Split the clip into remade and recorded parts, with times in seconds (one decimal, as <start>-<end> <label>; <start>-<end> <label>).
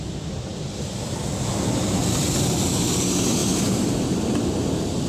0.0-5.1 recorded